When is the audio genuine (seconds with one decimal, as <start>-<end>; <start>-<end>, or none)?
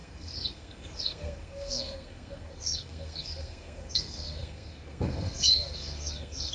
none